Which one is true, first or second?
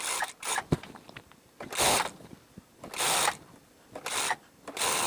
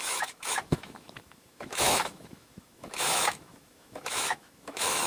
first